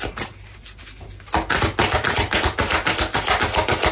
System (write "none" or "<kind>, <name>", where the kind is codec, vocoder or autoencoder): none